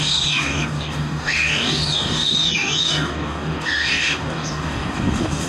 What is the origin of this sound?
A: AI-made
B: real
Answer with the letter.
A